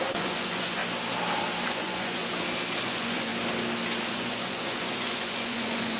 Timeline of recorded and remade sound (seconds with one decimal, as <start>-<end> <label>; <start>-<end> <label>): 0.0-0.8 remade; 0.8-1.6 recorded; 1.6-2.2 remade; 2.2-2.8 recorded; 2.8-3.3 remade; 3.3-4.1 recorded; 4.1-6.0 remade